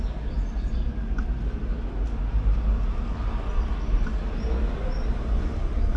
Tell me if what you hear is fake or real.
real